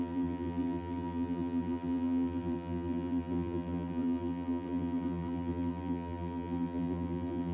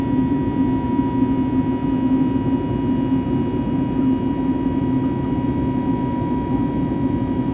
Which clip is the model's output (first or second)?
first